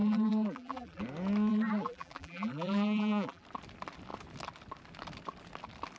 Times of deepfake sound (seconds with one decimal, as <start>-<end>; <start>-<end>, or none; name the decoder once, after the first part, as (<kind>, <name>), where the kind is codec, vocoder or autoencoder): 0.0-1.0 (vocoder, BigVGAN v2); 1.5-3.4

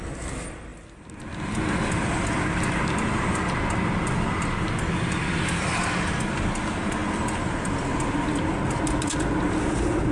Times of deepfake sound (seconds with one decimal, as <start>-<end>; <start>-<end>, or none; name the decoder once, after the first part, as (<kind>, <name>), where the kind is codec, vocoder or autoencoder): none

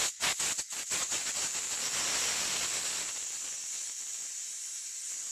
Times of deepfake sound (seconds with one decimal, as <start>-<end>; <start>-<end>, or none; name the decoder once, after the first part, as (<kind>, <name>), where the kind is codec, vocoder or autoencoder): none